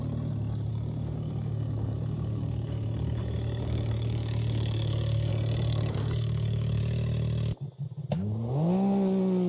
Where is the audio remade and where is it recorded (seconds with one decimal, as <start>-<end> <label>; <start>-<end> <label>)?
0.0-0.7 recorded; 0.7-5.3 remade; 5.3-5.7 recorded; 5.7-6.8 remade; 6.8-9.5 recorded